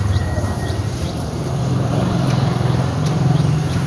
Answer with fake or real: fake